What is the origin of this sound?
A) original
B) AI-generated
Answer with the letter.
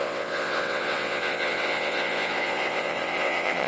B